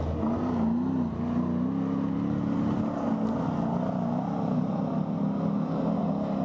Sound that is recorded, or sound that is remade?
recorded